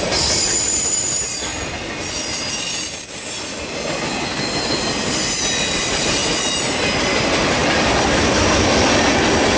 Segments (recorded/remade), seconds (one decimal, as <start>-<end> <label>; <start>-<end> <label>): 0.0-1.5 remade; 1.5-5.7 recorded; 5.7-6.2 remade; 6.2-7.0 recorded; 7.0-7.6 remade; 7.6-9.6 recorded